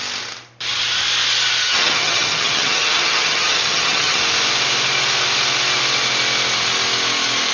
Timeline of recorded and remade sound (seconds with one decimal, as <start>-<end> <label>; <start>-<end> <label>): 0.0-1.6 recorded; 1.6-4.2 remade; 4.2-7.5 recorded